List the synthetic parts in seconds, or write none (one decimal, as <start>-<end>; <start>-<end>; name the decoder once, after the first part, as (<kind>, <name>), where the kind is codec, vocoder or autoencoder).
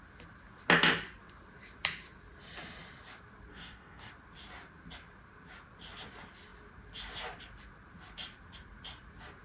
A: 3.5-4.1 (codec, DAC)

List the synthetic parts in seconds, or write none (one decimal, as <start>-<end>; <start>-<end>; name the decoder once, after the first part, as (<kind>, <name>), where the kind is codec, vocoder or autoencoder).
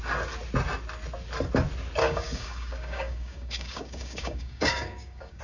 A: 2.0-5.4 (codec, DAC)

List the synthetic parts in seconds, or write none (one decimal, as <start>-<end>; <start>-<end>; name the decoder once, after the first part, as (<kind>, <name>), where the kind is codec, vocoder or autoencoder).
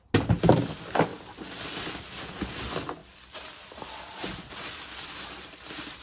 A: none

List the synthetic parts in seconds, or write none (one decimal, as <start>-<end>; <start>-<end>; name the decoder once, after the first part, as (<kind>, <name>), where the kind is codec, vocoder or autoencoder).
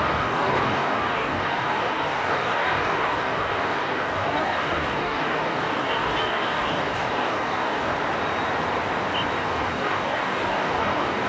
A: 0.0-7.9 (codec, DAC); 9.4-11.3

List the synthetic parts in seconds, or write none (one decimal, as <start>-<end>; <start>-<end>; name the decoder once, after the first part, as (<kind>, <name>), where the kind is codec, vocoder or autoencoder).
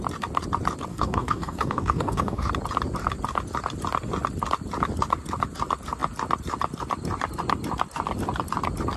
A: 0.9-2.5 (codec, DAC)